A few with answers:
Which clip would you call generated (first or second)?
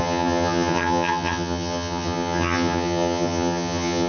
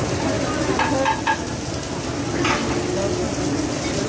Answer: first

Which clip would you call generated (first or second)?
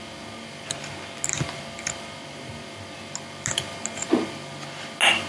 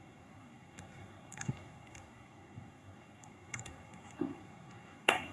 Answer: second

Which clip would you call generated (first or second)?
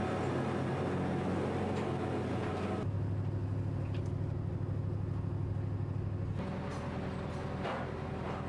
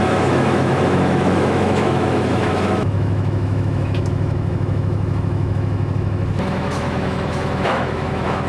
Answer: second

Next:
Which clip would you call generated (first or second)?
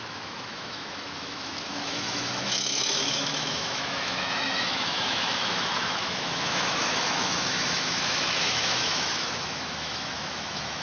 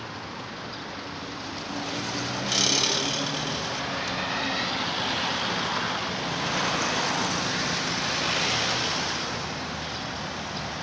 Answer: first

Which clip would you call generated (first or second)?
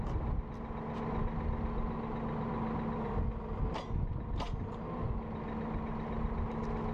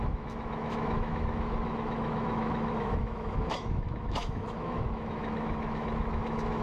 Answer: second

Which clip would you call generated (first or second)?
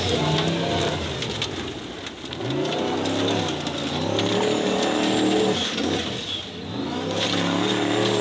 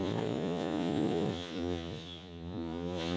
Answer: second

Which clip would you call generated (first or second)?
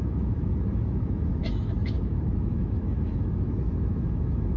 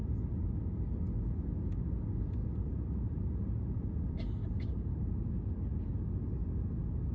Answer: first